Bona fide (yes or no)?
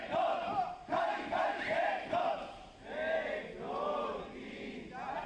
yes